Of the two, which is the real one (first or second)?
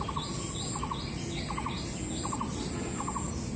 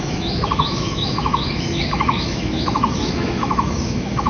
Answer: first